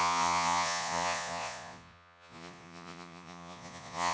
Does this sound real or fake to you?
fake